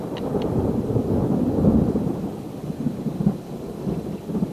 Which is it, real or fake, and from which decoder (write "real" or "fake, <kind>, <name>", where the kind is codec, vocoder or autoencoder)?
real